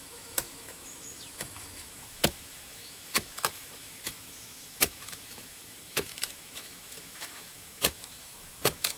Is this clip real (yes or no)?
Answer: no